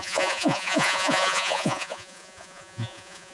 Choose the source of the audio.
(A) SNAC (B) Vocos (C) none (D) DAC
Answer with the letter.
B